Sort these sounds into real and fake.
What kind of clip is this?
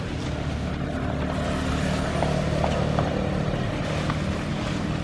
real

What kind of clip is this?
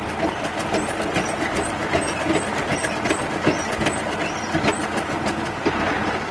real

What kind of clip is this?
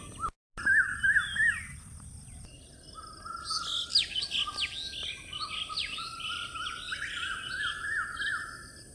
real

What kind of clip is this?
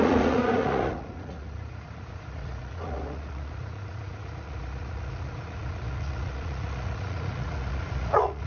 fake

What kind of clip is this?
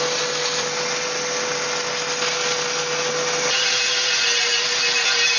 real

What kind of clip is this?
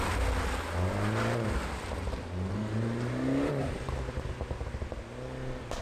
real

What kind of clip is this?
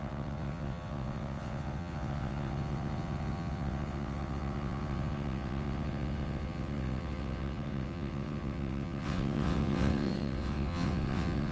fake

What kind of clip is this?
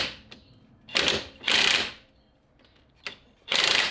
real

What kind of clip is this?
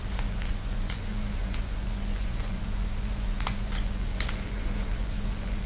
fake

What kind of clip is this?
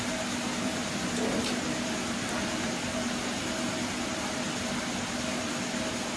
real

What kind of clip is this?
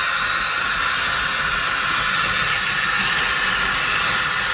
real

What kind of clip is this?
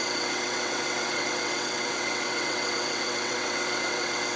fake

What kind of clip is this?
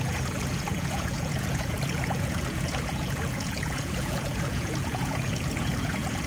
fake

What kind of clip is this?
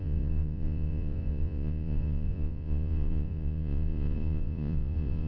fake